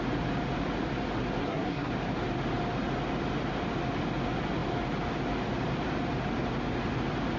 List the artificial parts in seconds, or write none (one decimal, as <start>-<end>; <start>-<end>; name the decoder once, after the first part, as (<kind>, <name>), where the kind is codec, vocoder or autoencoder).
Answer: 1.4-1.9 (codec, SNAC)